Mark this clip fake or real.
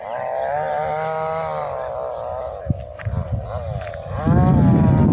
real